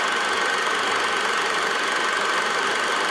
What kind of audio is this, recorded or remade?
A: recorded